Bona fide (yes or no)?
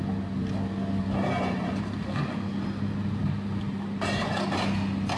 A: yes